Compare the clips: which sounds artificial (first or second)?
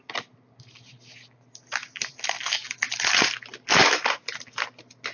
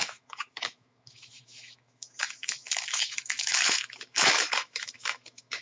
second